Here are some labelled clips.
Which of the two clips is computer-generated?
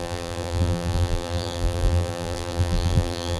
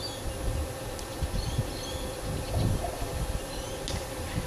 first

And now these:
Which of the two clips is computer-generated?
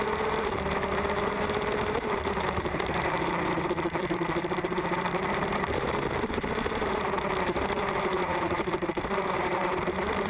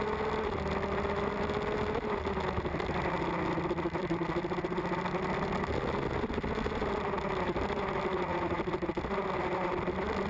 first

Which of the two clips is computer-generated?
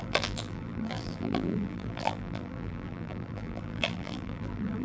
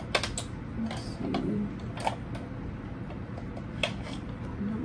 first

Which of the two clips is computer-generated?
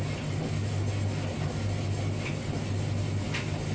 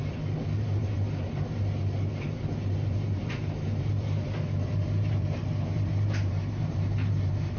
second